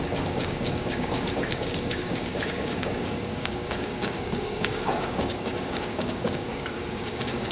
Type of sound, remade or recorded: remade